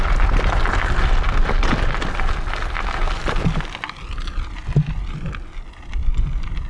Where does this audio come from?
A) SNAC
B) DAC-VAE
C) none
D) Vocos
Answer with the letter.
C